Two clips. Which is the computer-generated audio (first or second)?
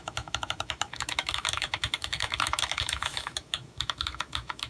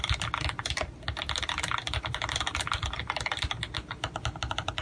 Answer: first